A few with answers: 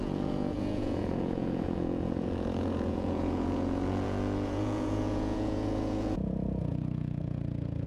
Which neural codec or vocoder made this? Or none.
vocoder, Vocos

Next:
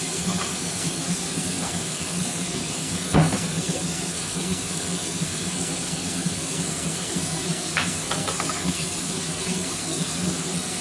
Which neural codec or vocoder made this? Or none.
codec, SNAC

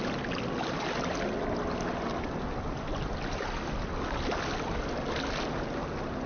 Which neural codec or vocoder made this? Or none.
none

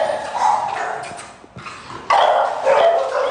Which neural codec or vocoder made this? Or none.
none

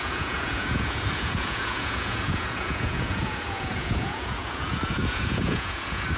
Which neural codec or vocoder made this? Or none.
vocoder, Vocos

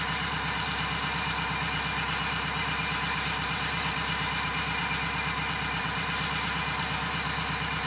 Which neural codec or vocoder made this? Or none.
vocoder, BigVGAN v2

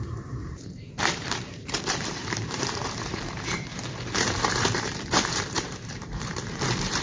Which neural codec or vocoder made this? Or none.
vocoder, BigVGAN v2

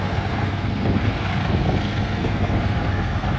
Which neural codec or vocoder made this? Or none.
codec, SNAC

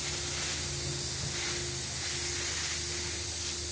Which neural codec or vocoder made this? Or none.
none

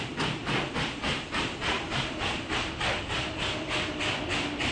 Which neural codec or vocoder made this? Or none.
none